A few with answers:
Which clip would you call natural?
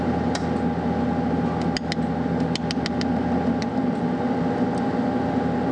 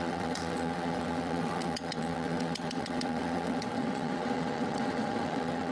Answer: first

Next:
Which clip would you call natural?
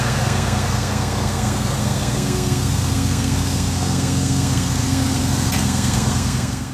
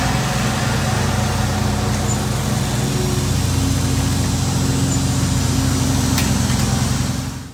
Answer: second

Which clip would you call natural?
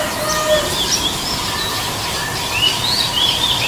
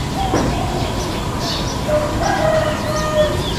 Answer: second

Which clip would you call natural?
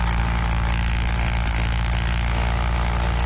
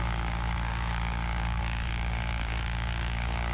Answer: first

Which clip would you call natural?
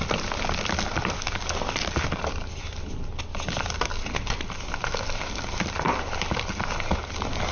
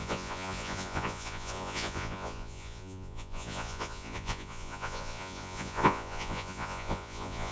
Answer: first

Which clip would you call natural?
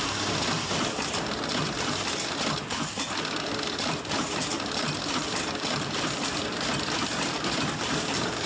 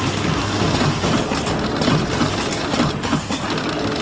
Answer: second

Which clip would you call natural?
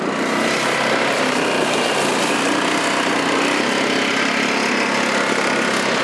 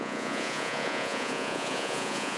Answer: first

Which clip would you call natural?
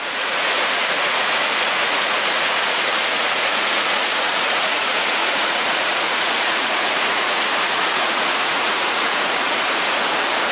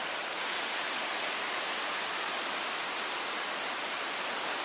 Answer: second